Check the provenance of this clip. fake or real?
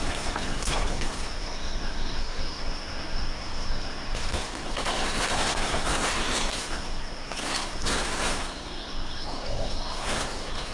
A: fake